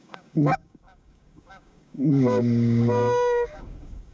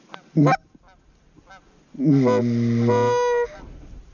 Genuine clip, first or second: second